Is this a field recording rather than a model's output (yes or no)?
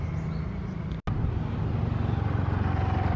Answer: yes